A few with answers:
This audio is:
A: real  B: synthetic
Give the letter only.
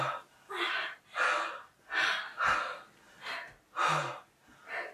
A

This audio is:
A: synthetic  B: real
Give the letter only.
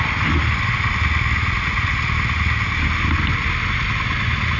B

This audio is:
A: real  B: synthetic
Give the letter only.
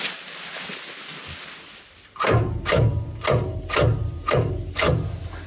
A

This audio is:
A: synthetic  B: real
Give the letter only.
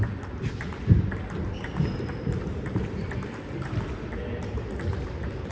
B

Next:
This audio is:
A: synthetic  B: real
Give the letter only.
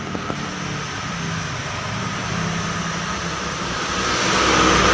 B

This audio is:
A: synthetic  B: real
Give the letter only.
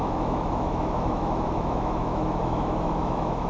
A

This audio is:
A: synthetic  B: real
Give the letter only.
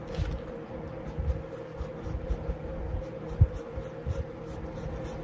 B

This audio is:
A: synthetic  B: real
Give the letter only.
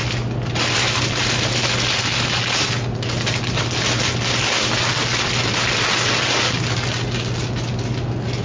B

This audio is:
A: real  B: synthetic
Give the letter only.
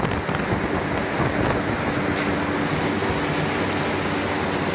A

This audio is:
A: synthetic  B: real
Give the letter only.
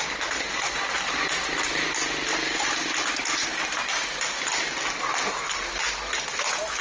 B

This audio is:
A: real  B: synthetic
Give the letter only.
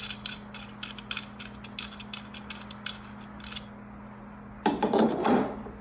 A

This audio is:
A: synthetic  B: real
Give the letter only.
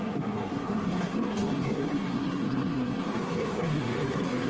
A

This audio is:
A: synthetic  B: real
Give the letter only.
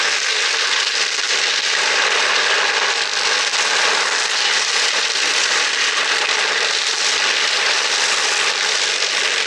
B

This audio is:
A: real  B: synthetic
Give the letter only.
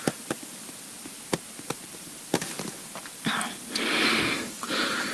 A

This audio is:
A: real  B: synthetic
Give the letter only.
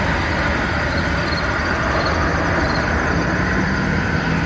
A